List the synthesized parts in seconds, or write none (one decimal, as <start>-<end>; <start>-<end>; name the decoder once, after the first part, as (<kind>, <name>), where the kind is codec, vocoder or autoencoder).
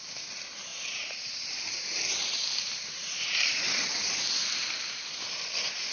0.7-4.2 (vocoder, BigVGAN v2)